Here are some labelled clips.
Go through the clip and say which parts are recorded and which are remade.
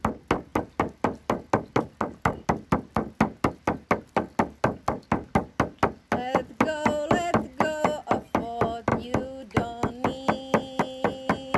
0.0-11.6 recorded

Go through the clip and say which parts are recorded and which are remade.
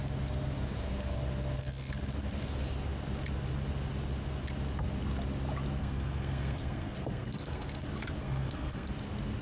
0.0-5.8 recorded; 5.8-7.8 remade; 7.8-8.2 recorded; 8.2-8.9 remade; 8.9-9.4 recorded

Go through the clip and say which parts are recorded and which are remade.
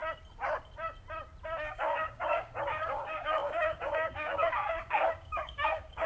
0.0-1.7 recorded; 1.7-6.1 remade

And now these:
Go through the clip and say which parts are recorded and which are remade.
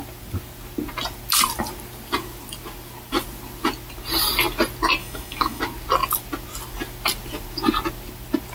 0.0-5.0 recorded; 5.0-5.6 remade; 5.6-8.5 recorded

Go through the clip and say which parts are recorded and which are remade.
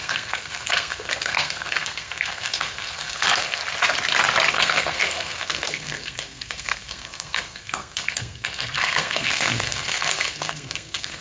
0.0-3.6 remade; 3.6-4.5 recorded; 4.5-11.2 remade